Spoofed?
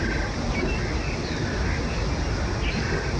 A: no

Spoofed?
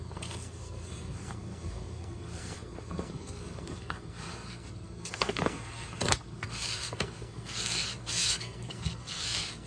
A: yes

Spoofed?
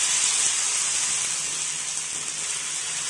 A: no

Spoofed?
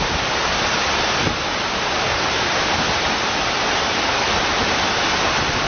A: no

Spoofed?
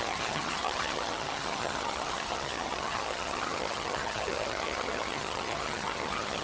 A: yes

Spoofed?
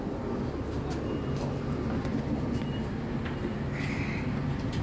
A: no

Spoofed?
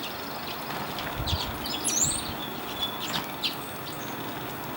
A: no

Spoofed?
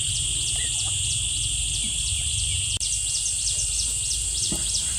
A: yes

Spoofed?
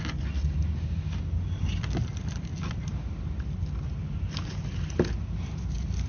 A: no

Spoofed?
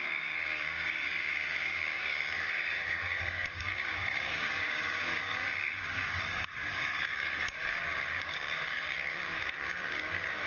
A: yes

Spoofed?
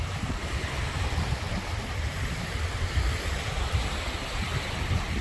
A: no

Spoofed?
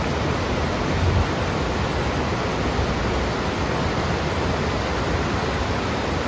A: no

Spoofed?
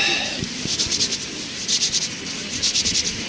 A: no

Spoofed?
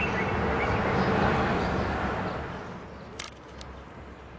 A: no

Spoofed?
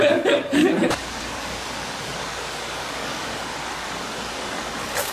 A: yes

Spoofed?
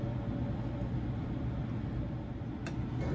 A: no